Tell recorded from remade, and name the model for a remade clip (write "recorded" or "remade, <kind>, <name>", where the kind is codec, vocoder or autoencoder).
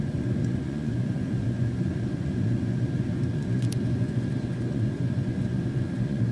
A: remade, vocoder, Vocos